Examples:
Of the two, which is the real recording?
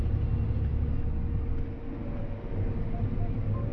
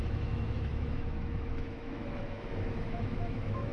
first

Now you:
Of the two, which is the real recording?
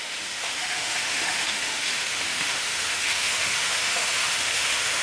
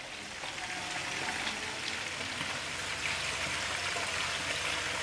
second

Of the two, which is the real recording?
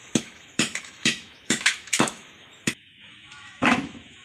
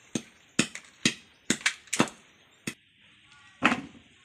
second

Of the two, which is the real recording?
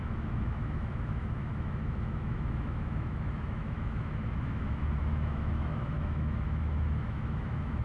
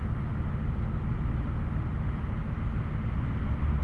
second